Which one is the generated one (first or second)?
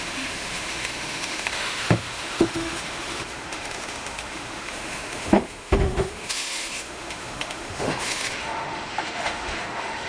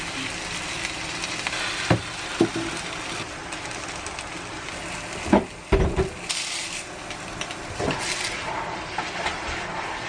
first